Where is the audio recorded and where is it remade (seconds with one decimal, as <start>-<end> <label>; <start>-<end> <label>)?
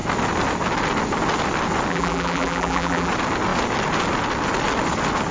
0.0-1.9 recorded; 1.9-3.1 remade; 3.1-5.3 recorded